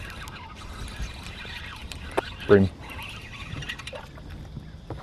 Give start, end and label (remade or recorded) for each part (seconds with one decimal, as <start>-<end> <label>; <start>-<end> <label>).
0.0-1.8 recorded; 1.8-3.8 remade; 3.8-5.0 recorded